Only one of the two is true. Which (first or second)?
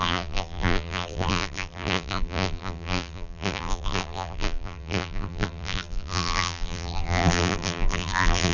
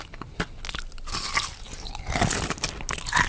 second